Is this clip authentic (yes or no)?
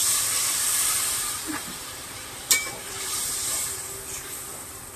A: no